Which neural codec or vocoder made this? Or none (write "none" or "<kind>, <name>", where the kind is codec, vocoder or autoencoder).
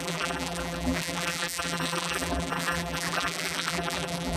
vocoder, BigVGAN v2